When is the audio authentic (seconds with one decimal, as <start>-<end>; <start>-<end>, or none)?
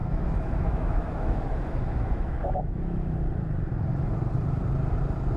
3.2-5.4